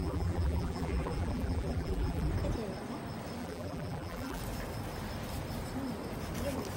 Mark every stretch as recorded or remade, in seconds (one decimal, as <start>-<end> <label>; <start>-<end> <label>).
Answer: 0.0-2.3 remade; 2.3-3.4 recorded; 3.4-4.4 remade; 4.4-6.8 recorded